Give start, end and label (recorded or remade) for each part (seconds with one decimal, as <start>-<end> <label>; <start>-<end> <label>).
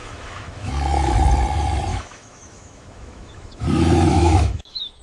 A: 0.0-0.7 remade; 0.7-1.9 recorded; 1.9-3.6 remade; 3.6-4.1 recorded; 4.1-5.0 remade